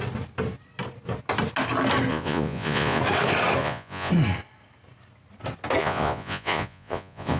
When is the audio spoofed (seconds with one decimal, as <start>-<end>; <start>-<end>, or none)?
2.1-3.0; 3.6-4.1; 5.8-7.4